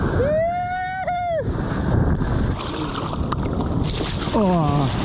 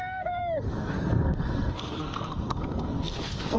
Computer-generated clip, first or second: second